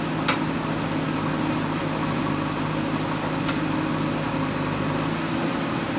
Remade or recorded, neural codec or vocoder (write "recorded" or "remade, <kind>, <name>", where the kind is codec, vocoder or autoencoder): recorded